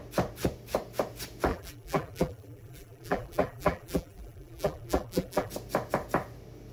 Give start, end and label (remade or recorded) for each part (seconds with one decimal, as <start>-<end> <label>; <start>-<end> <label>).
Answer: 0.0-1.5 recorded; 1.5-5.5 remade; 5.5-6.7 recorded